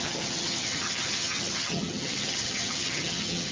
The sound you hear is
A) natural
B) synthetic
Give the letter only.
B